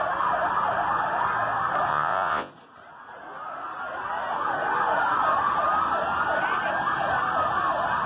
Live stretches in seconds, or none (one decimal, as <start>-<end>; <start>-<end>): 0.0-1.9; 2.5-8.1